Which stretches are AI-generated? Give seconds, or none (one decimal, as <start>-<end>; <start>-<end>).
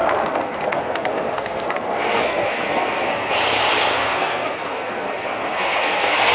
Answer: 0.0-3.3; 4.0-6.3